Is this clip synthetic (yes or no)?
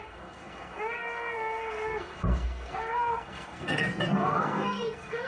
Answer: yes